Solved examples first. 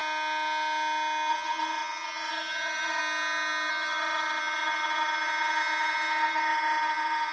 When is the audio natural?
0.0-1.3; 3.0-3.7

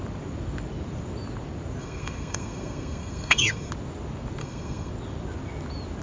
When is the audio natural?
0.0-1.8; 3.7-4.4; 4.9-6.0

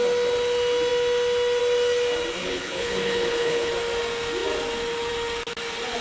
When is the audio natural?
0.0-2.4; 3.7-6.0

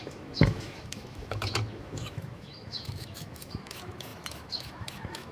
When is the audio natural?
none

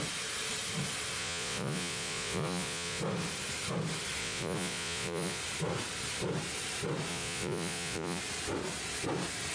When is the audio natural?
0.0-1.2; 3.0-4.2; 5.4-7.1; 8.2-9.5

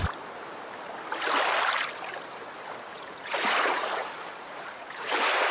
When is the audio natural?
0.0-2.9; 5.1-5.5

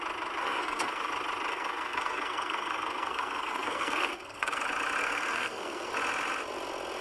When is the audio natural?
0.0-0.4; 1.1-1.5; 4.6-5.0; 5.9-7.0

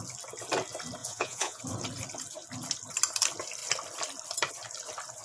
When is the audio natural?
0.0-1.0; 1.6-5.2